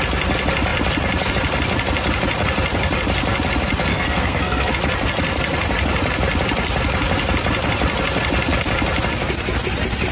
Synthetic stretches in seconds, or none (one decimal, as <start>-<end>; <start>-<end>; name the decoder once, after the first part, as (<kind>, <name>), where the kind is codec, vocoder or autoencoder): 3.9-4.7 (codec, SNAC)